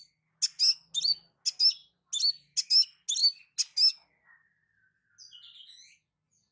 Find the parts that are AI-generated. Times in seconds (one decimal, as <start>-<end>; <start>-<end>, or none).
none